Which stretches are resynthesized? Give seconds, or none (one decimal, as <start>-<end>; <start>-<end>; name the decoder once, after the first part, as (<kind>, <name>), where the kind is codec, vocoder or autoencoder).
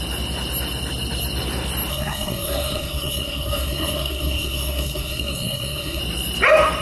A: 1.9-6.0 (codec, SNAC)